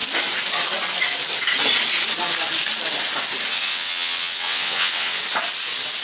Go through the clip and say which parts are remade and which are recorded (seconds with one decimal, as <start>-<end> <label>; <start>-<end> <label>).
0.0-3.5 recorded; 3.5-5.2 remade; 5.2-6.0 recorded